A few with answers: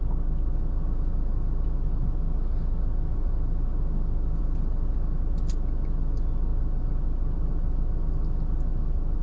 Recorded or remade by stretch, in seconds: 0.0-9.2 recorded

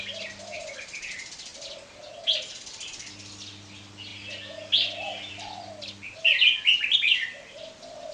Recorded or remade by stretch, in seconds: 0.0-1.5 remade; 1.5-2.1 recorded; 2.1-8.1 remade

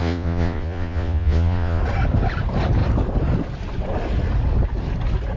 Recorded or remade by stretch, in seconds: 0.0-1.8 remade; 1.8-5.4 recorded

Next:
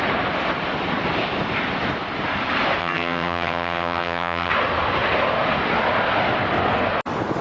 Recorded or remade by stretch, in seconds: 0.0-2.8 recorded; 2.8-4.5 remade; 4.5-7.4 recorded